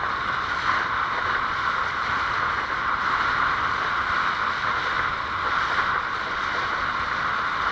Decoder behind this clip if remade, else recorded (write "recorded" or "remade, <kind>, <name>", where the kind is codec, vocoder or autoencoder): recorded